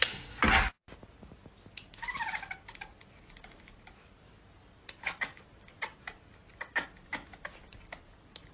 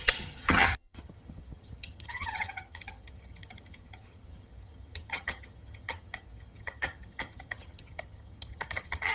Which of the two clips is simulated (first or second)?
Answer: second